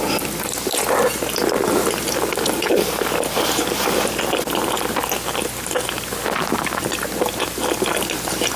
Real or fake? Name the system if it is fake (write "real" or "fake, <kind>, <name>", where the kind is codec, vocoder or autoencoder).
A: real